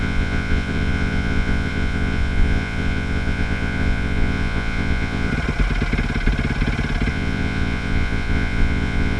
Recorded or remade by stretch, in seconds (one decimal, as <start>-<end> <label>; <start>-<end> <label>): 0.0-5.3 remade; 5.3-7.1 recorded; 7.1-9.2 remade